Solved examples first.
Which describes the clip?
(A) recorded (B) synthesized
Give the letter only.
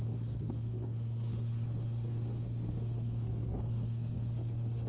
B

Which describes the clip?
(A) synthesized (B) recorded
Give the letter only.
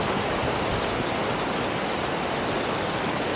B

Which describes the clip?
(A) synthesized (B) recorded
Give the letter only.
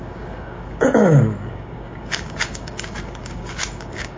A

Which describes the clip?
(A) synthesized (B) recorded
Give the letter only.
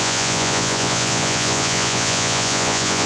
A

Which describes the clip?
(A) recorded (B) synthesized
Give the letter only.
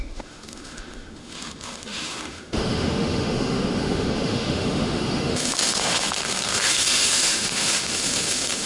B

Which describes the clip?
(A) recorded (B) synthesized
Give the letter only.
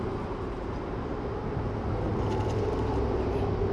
A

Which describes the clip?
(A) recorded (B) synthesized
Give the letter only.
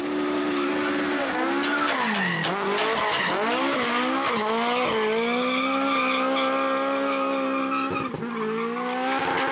A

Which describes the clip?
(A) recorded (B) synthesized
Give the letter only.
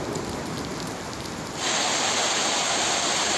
A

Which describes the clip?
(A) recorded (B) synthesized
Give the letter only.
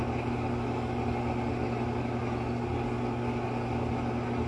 A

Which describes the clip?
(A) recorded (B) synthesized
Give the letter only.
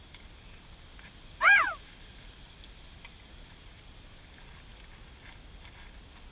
A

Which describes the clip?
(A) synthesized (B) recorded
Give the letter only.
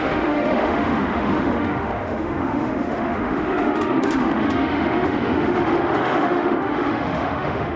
A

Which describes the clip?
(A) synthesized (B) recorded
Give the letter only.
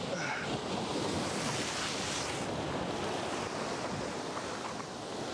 B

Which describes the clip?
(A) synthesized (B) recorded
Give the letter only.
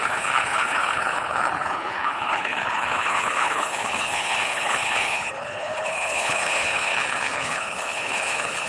A